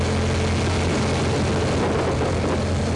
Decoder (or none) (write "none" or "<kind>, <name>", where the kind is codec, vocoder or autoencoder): none